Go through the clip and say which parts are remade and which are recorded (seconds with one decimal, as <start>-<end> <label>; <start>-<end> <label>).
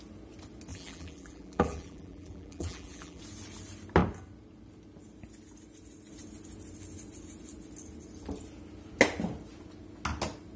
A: 0.0-0.7 recorded; 0.7-3.2 remade; 3.2-10.6 recorded